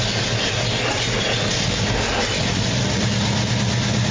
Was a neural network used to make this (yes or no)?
no